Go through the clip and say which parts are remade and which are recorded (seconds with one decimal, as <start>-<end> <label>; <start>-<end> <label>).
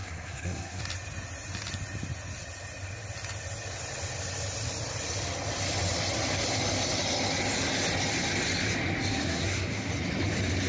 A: 0.0-0.8 remade; 0.8-9.1 recorded; 9.1-9.9 remade; 9.9-10.7 recorded